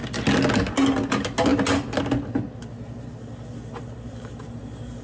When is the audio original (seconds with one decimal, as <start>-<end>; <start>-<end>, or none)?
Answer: 0.0-5.0